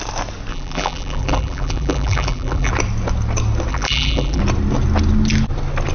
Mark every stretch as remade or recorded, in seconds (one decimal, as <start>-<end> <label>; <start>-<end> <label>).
0.0-0.5 recorded; 0.5-2.7 remade; 2.7-3.7 recorded; 3.7-4.4 remade; 4.4-5.9 recorded